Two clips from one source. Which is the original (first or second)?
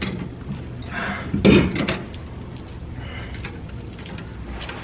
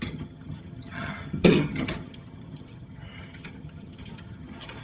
first